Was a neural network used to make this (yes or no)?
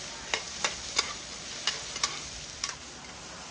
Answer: no